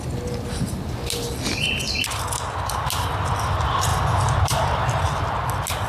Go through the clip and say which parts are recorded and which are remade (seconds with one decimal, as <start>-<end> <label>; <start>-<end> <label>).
0.0-3.9 recorded; 3.9-5.2 remade; 5.2-5.9 recorded